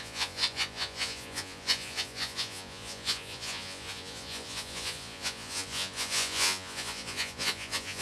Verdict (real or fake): fake